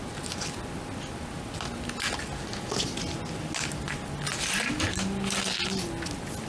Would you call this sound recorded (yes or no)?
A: yes